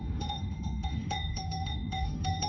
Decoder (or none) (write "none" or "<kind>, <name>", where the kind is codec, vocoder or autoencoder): autoencoder, DAC-VAE